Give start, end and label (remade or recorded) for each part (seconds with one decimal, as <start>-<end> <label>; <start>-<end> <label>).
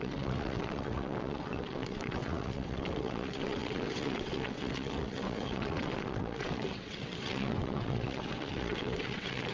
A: 0.0-9.5 remade